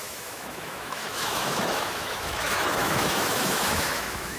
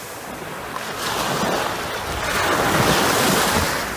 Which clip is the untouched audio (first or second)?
second